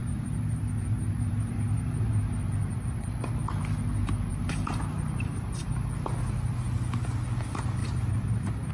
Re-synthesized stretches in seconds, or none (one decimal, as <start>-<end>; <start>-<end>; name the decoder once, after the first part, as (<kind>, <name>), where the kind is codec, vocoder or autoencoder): 0.0-3.1 (vocoder, BigVGAN v2); 4.3-5.9; 7.8-8.7